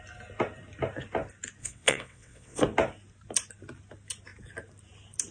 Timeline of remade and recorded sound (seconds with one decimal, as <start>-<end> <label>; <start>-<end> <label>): 0.0-1.6 recorded; 1.6-2.6 remade; 2.6-5.3 recorded